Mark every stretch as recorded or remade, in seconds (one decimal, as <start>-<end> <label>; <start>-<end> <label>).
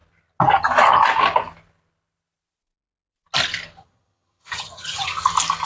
0.0-3.8 recorded; 3.8-5.1 remade; 5.1-5.7 recorded